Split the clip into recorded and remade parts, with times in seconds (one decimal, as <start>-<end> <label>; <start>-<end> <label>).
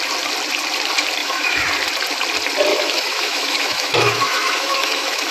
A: 0.0-1.2 recorded; 1.2-1.7 remade; 1.7-2.7 recorded; 2.7-5.3 remade